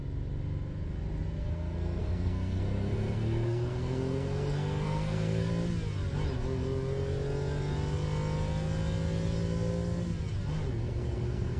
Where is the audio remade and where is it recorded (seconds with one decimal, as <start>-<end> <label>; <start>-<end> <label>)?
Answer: 0.0-1.4 recorded; 1.4-5.5 remade; 5.5-10.8 recorded; 10.8-11.6 remade